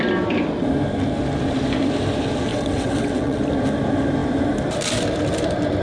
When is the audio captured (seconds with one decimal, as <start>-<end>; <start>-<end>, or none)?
0.0-2.5; 3.4-5.8